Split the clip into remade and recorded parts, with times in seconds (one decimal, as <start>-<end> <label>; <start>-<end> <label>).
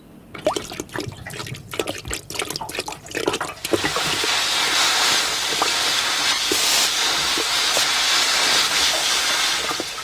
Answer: 0.0-10.0 recorded